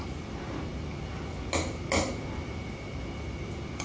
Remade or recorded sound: recorded